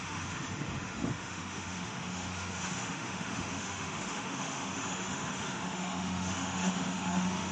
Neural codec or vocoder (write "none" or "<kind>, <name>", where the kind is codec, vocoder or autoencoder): autoencoder, DAC-VAE